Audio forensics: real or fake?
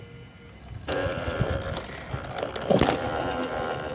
real